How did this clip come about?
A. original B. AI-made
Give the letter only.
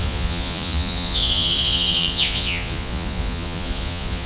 B